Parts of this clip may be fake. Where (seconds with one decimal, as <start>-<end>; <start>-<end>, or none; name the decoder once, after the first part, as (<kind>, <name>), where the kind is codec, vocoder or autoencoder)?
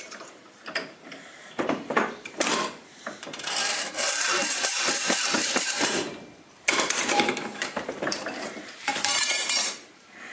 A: 0.0-10.3 (vocoder, BigVGAN v2)